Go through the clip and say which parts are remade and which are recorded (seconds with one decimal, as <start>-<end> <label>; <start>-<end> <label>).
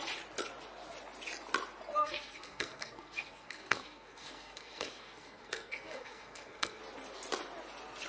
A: 0.0-2.0 recorded; 2.0-6.8 remade; 6.8-8.1 recorded